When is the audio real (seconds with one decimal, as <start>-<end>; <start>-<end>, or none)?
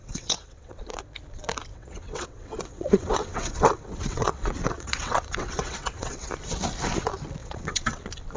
0.8-1.7; 6.3-7.4; 8.0-8.4